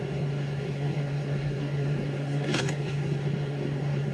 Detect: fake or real fake